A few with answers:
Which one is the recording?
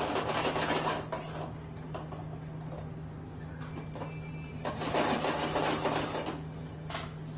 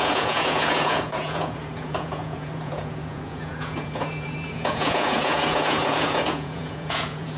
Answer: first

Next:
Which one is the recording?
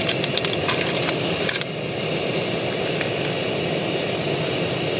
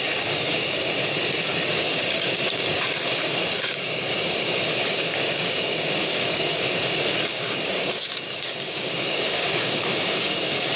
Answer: first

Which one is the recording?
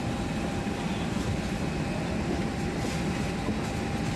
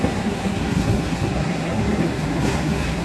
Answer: first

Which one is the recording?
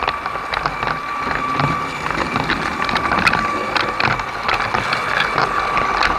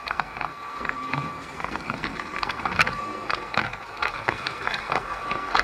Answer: first